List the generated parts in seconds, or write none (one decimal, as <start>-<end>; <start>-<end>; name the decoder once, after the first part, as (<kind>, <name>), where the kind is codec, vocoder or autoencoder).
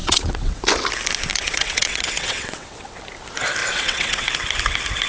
0.0-0.6 (vocoder, WaveNeXt); 1.3-3.0; 3.6-4.3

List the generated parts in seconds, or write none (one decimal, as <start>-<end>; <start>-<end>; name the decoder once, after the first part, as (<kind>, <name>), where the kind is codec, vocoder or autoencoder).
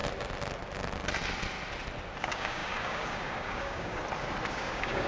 2.2-4.0 (codec, DAC); 4.5-5.1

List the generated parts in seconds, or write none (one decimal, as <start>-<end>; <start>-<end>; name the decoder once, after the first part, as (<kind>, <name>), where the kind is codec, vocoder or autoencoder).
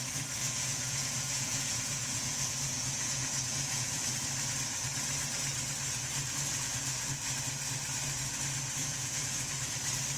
0.4-4.0 (vocoder, Vocos); 6.5-7.1; 8.8-9.5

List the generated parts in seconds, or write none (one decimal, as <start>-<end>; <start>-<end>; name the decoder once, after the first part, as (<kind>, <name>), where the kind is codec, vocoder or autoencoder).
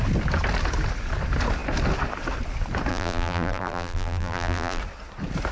2.9-4.8 (vocoder, BigVGAN v2)